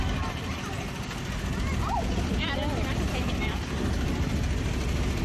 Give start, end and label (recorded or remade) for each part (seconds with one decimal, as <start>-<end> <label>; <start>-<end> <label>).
0.0-5.2 recorded